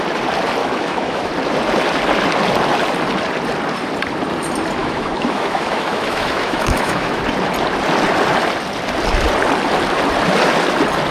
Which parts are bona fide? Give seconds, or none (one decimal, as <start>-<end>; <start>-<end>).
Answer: 0.0-0.6; 1.3-4.8; 7.2-11.1

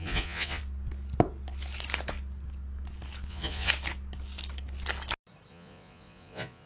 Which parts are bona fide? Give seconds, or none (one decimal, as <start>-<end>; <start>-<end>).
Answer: 0.6-3.3; 3.7-5.5